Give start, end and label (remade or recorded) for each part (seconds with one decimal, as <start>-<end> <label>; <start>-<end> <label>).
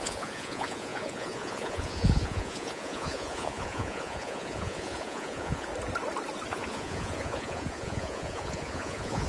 0.0-5.7 remade; 5.7-6.5 recorded; 6.5-9.3 remade